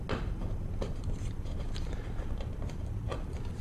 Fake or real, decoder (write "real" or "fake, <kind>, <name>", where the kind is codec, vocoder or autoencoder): real